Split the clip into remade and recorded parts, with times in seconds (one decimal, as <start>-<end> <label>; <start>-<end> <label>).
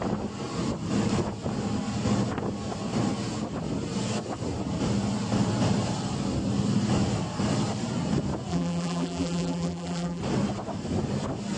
0.0-8.5 recorded; 8.5-10.2 remade; 10.2-11.6 recorded